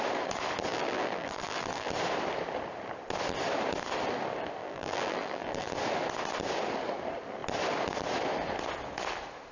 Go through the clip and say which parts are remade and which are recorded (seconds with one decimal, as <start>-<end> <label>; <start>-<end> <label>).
0.0-0.7 recorded; 0.7-1.9 remade; 1.9-4.6 recorded; 4.6-5.7 remade; 5.7-9.5 recorded